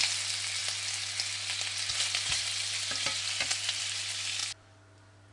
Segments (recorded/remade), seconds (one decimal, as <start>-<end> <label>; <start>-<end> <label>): 0.0-5.3 recorded